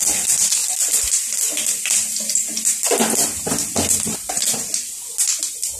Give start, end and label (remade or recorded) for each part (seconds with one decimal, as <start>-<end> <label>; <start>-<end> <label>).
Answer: 0.0-5.8 recorded